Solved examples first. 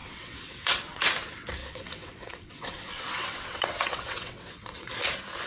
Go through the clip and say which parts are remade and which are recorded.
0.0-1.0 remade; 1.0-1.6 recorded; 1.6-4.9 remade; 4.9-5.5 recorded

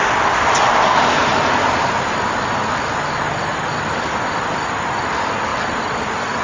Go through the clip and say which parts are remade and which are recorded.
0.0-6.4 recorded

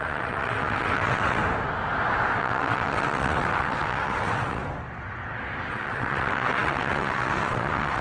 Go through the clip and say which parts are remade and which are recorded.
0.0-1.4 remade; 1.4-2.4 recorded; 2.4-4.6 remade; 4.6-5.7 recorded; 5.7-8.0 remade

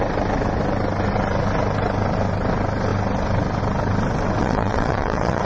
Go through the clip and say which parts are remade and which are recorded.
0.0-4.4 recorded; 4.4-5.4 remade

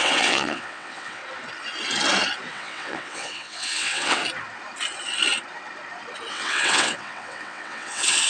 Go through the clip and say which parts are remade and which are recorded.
0.0-1.2 remade; 1.2-2.5 recorded; 2.5-4.2 remade; 4.2-6.3 recorded; 6.3-8.3 remade

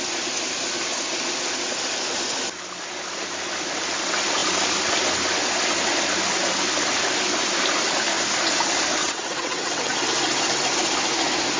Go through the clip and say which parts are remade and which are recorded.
0.0-9.0 recorded; 9.0-9.9 remade; 9.9-11.6 recorded

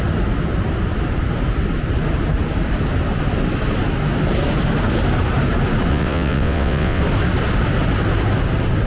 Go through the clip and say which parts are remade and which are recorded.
0.0-5.9 recorded; 5.9-7.0 remade; 7.0-8.9 recorded

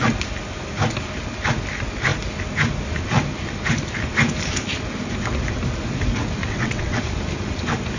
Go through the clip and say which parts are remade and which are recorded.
0.0-6.4 recorded; 6.4-7.0 remade; 7.0-8.0 recorded